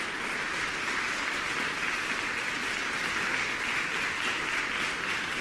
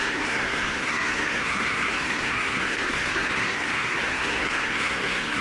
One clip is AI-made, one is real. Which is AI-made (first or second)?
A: second